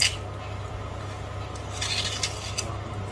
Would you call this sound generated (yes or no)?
no